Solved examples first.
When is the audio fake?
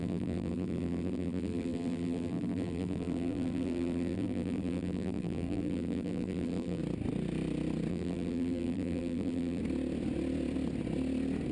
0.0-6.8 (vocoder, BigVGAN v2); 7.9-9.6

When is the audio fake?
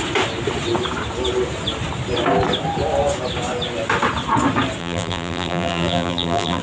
4.8-6.6 (vocoder, BigVGAN v2)